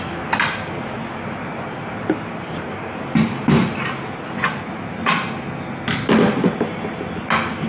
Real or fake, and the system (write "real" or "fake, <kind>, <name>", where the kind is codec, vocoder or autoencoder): real